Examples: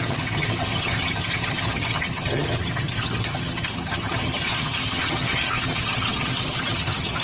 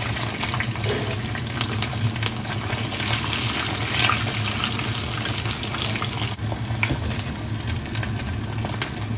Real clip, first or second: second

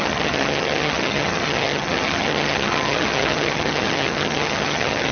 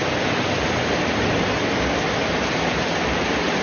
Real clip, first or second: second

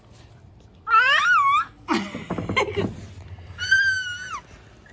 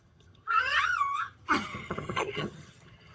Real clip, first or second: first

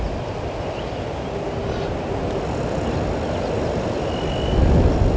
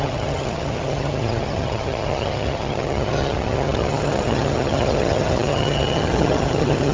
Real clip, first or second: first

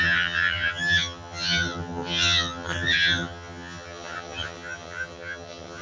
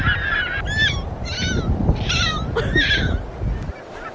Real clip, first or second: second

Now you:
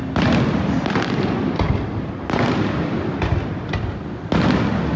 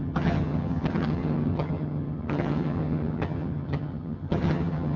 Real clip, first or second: first